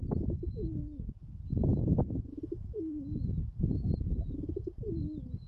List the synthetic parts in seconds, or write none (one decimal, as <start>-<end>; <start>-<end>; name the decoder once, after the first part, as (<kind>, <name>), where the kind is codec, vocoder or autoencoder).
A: none